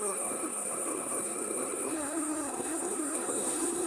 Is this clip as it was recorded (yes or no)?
no